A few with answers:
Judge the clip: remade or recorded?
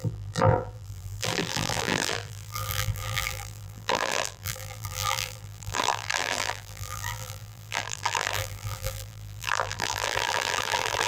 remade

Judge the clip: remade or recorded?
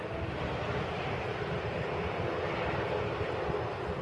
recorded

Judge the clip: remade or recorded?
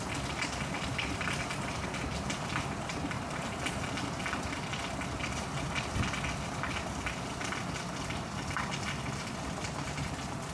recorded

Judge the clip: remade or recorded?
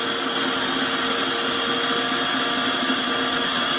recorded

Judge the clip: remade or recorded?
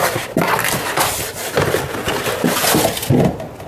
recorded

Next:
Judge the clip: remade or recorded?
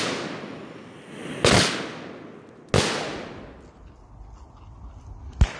recorded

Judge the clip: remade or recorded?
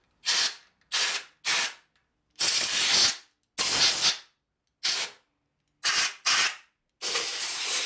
recorded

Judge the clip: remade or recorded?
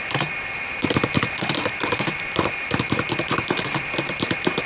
remade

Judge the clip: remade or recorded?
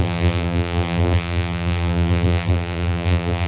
remade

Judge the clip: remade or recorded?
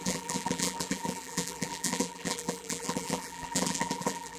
remade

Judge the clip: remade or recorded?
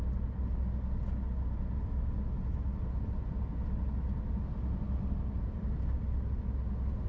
recorded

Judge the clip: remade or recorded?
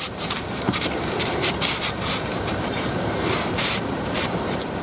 remade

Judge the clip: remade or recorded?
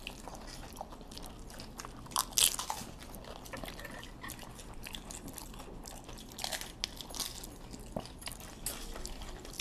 recorded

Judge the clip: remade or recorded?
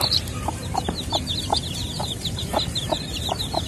remade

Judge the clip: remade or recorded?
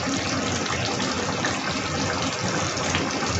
recorded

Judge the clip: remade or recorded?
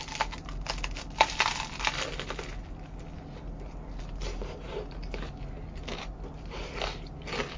recorded